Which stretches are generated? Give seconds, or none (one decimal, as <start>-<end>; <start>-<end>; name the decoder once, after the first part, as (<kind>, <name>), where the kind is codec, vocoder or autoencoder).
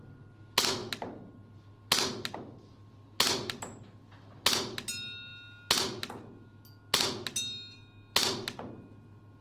none